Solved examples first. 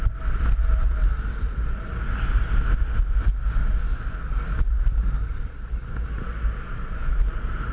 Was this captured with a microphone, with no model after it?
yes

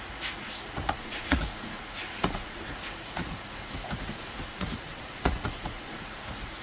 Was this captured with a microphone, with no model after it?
no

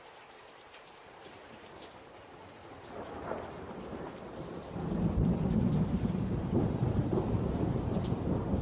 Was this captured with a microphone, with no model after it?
no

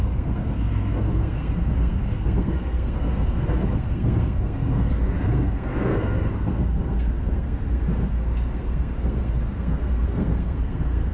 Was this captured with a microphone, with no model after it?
no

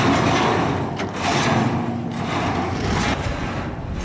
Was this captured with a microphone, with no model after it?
yes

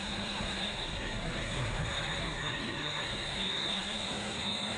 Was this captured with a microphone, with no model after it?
no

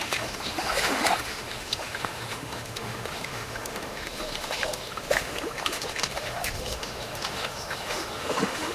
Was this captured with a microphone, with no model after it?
no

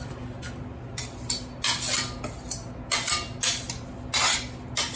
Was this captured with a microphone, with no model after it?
yes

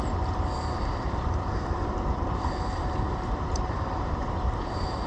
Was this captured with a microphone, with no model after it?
no